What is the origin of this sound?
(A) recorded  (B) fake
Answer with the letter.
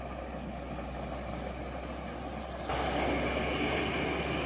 A